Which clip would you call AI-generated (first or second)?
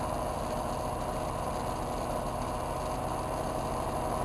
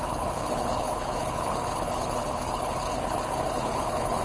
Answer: second